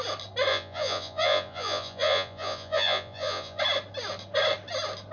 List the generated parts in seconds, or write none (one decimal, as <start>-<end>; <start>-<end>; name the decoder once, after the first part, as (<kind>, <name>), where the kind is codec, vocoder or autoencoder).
0.5-3.6 (vocoder, Vocos)